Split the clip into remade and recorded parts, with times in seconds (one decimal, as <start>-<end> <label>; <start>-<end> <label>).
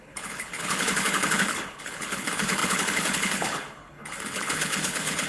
0.0-5.3 remade